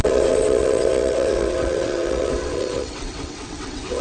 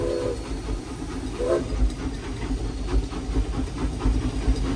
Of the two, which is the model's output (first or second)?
first